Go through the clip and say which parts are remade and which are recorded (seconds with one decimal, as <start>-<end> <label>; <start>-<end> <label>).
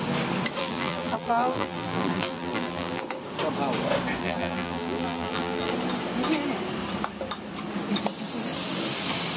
0.0-0.6 recorded; 0.6-3.0 remade; 3.0-4.2 recorded; 4.2-5.7 remade; 5.7-9.4 recorded